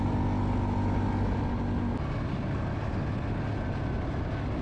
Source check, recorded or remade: recorded